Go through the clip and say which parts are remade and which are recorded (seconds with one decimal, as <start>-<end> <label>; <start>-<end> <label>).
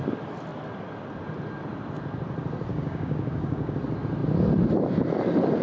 0.0-2.7 recorded; 2.7-3.7 remade; 3.7-5.6 recorded